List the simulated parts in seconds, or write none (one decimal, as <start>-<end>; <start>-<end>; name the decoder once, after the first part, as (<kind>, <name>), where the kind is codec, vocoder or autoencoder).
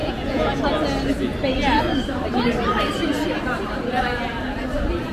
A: 0.0-0.6 (vocoder, Vocos)